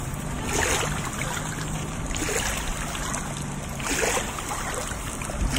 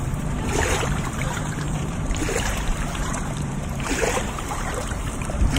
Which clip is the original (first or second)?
first